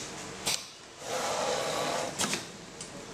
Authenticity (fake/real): real